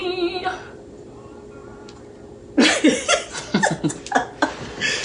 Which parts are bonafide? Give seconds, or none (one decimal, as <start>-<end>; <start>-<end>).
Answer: 0.0-0.6; 1.6-4.6